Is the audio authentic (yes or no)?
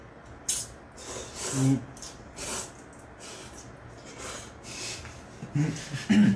yes